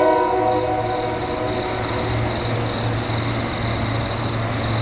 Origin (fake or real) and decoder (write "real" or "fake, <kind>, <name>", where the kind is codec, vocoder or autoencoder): real